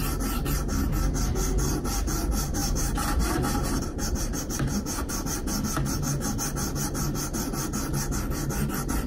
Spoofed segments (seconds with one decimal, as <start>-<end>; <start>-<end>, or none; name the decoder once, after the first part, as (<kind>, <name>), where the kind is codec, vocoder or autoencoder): 2.6-5.1 (vocoder, BigVGAN v2)